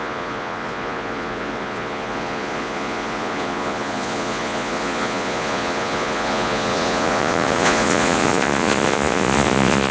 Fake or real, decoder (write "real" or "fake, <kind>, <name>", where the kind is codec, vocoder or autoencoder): fake, vocoder, Vocos